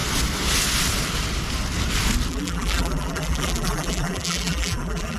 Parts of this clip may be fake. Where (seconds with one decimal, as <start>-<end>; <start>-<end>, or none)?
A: 2.3-5.2